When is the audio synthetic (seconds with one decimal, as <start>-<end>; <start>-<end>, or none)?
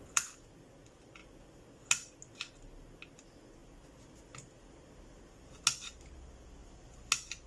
none